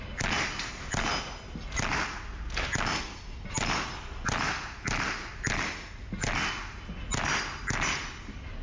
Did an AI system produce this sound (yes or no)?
no